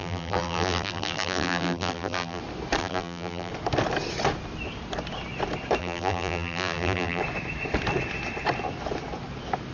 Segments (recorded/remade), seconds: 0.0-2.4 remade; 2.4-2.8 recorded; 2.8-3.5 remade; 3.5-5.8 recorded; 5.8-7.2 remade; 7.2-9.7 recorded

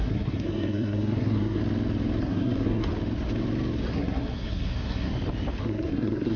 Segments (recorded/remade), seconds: 0.0-1.6 remade; 1.6-2.2 recorded; 2.2-2.9 remade; 2.9-3.9 recorded; 3.9-5.1 remade; 5.1-5.6 recorded; 5.6-6.4 remade

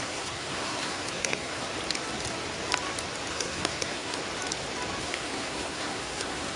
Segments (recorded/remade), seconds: 0.0-1.7 remade; 1.7-3.3 recorded; 3.3-4.2 remade; 4.2-5.0 recorded; 5.0-6.6 remade

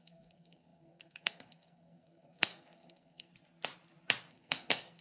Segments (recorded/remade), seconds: 0.0-3.3 remade; 3.3-4.3 recorded; 4.3-5.0 remade

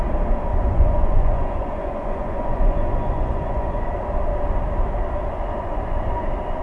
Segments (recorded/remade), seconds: 0.0-0.5 recorded; 0.5-3.9 remade; 3.9-5.3 recorded; 5.3-6.1 remade; 6.1-6.6 recorded

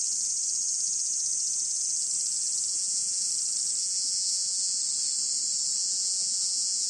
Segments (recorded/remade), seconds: 0.0-2.7 recorded; 2.7-3.3 remade; 3.3-3.8 recorded; 3.8-4.8 remade; 4.8-5.8 recorded; 5.8-6.9 remade

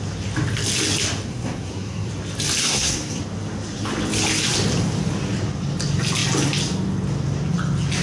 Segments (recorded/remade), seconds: 0.0-1.3 recorded; 1.3-2.1 remade; 2.1-2.6 recorded; 2.6-3.2 remade; 3.2-8.0 recorded

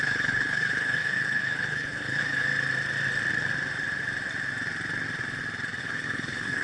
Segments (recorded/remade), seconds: 0.0-2.5 remade; 2.5-5.8 recorded; 5.8-6.6 remade